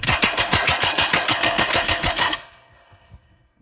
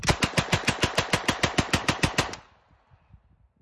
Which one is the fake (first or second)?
first